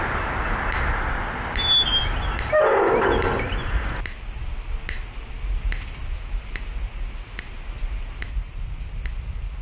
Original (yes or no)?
yes